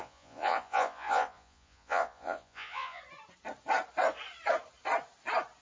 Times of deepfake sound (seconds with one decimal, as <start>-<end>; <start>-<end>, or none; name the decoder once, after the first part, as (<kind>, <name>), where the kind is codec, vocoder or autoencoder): 0.0-3.0 (vocoder, Vocos)